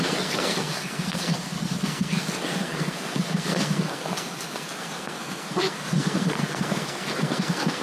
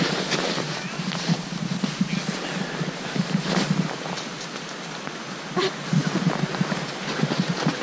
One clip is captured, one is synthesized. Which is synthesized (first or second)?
first